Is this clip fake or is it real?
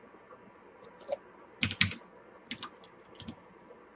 real